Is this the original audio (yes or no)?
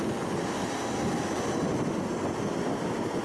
yes